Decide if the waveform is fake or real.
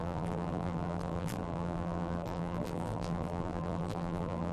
fake